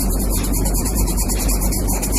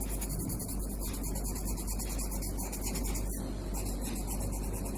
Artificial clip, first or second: first